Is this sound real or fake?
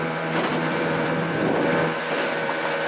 fake